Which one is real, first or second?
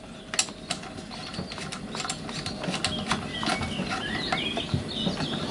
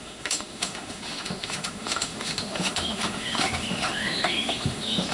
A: first